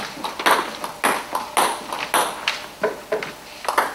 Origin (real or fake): real